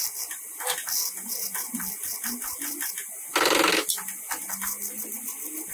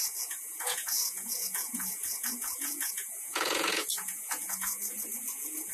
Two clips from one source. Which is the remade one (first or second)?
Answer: second